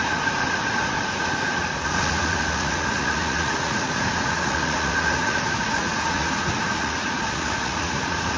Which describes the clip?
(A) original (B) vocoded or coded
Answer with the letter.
B